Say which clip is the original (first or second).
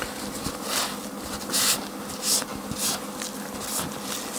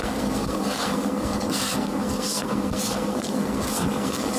first